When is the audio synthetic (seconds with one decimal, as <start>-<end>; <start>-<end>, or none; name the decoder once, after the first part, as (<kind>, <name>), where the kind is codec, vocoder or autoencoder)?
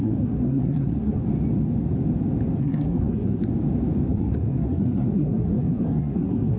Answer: 0.0-1.2 (codec, SNAC); 2.6-3.5; 4.1-6.6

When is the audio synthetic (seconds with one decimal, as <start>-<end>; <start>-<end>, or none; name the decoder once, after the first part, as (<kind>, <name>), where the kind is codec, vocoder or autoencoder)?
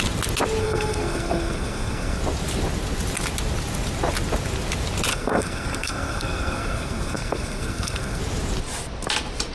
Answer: 0.6-2.2 (codec, SNAC); 5.1-8.2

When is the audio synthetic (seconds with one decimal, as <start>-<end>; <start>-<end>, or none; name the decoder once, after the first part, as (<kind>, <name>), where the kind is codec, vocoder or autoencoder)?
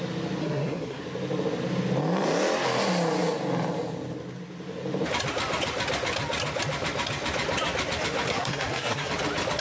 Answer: 0.4-1.0 (codec, SNAC); 8.3-9.1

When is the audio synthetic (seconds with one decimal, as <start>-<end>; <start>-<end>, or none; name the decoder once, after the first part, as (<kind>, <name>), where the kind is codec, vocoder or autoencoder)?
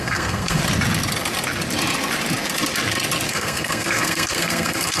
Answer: 0.0-0.6 (codec, SNAC); 3.3-5.0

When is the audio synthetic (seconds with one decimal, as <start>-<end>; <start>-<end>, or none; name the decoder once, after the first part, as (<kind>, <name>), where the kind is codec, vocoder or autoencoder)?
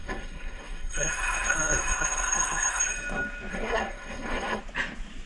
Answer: 0.0-2.9 (codec, SNAC); 3.5-4.6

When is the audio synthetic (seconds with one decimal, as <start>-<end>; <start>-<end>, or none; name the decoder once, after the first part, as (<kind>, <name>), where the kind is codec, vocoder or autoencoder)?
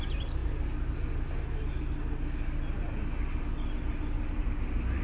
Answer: none